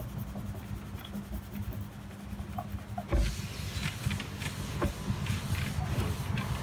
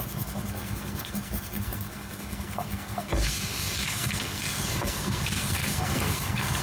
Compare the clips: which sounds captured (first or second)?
first